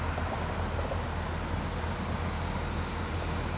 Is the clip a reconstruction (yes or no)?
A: no